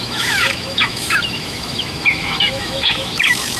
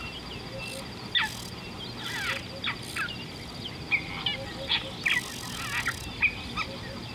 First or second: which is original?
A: second